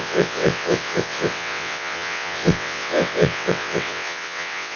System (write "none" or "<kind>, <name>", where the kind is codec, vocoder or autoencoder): vocoder, WaveNeXt